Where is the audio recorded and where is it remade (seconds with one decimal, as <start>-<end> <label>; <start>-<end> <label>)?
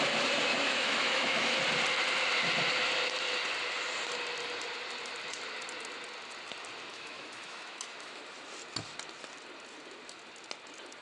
0.0-0.5 recorded; 0.5-1.6 remade; 1.6-6.9 recorded; 6.9-8.2 remade; 8.2-11.0 recorded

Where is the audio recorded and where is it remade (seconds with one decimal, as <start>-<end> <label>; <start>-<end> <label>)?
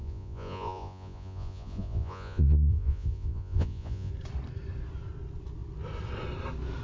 0.0-4.1 remade; 4.1-6.8 recorded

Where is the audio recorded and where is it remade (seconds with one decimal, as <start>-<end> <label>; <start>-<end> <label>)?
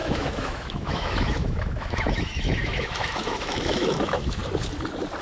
0.0-4.4 remade; 4.4-5.2 recorded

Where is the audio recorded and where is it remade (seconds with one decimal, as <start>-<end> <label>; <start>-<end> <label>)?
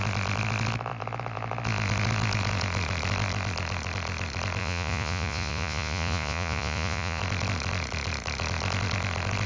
0.0-4.6 recorded; 4.6-7.2 remade; 7.2-9.5 recorded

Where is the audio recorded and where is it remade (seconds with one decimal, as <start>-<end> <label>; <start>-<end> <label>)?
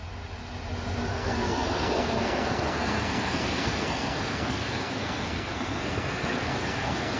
0.0-1.1 recorded; 1.1-7.2 remade